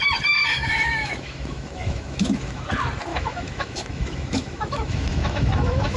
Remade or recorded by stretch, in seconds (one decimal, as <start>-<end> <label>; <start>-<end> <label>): 0.0-0.5 recorded; 0.5-2.7 remade; 2.7-3.1 recorded; 3.1-6.0 remade